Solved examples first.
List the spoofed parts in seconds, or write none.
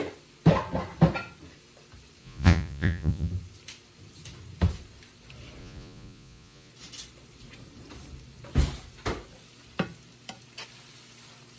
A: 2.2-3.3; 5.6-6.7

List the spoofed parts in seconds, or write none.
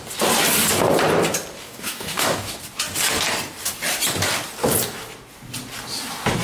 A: 1.6-2.6